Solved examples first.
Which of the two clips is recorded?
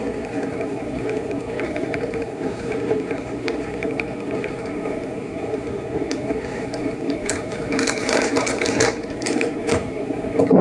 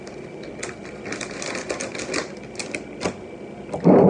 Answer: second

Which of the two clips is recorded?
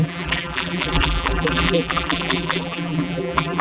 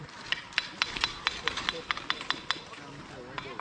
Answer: second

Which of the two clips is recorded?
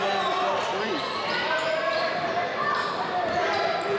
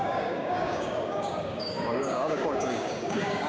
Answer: first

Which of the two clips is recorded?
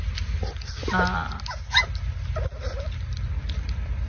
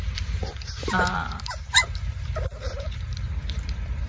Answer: first